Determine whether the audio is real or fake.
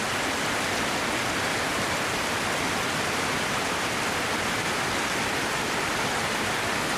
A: real